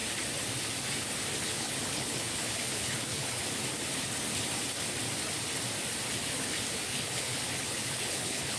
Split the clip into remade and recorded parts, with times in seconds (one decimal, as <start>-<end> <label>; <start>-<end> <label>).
0.0-1.5 recorded; 1.5-3.4 remade; 3.4-6.9 recorded; 6.9-8.6 remade